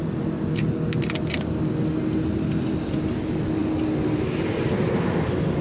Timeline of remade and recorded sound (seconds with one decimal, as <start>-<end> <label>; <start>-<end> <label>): 0.0-5.6 recorded